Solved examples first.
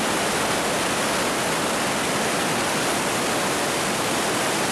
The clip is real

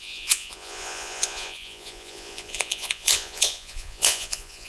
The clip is fake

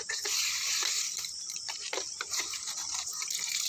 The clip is fake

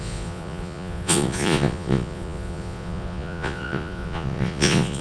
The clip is fake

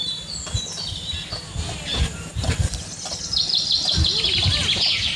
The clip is fake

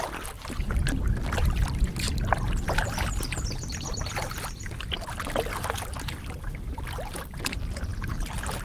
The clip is real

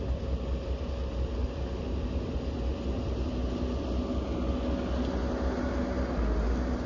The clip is real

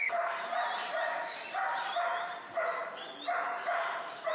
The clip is fake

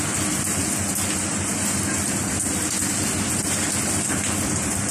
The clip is real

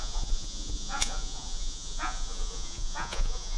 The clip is fake